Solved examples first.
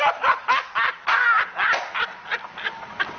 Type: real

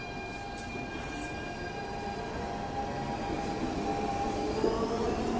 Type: real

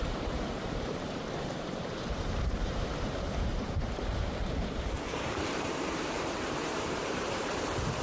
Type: fake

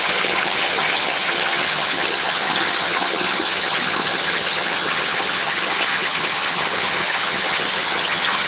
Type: fake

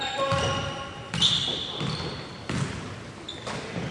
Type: real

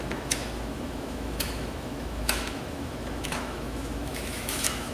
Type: fake